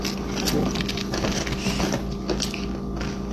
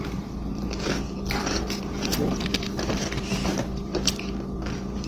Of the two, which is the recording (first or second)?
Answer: first